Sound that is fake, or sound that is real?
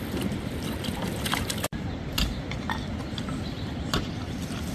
fake